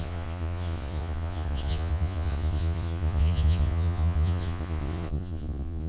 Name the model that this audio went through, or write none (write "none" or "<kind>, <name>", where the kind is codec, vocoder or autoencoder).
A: vocoder, Vocos